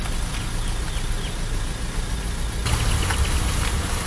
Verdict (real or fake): real